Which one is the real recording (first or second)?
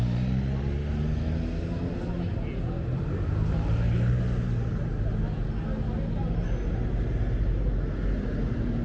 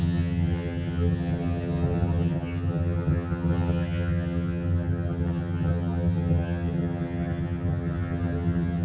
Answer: first